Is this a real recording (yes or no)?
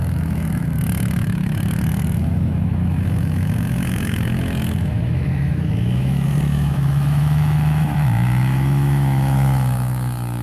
no